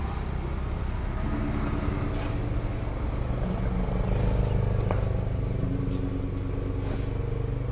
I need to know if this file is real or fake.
real